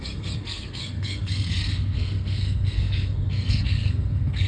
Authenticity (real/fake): fake